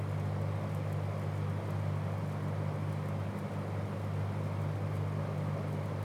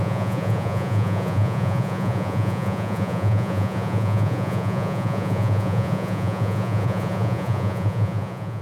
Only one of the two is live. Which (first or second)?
first